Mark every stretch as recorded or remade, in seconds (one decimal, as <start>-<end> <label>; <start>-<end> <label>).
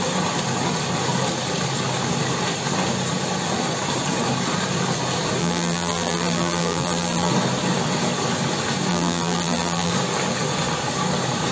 0.0-5.4 recorded; 5.4-7.3 remade; 7.3-8.9 recorded; 8.9-9.9 remade; 9.9-11.5 recorded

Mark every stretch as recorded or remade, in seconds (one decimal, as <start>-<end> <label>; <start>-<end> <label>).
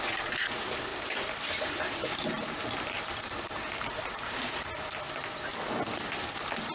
0.0-0.9 recorded; 0.9-4.9 remade; 4.9-6.7 recorded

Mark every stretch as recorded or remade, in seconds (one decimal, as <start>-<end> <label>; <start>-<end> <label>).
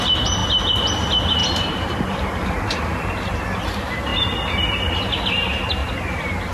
0.0-1.4 recorded; 1.4-2.6 remade; 2.6-5.8 recorded; 5.8-6.5 remade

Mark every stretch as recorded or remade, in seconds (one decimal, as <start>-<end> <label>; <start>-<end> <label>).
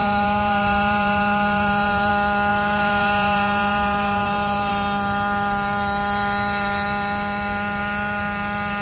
0.0-2.1 remade; 2.1-2.5 recorded; 2.5-4.7 remade; 4.7-8.8 recorded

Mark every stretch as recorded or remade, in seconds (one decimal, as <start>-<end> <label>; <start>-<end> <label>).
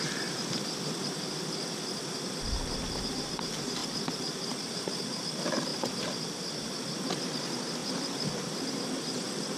0.0-5.7 recorded; 5.7-6.4 remade; 6.4-7.8 recorded; 7.8-8.7 remade; 8.7-9.6 recorded